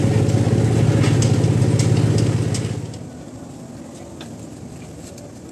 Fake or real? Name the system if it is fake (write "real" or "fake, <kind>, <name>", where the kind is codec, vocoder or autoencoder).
real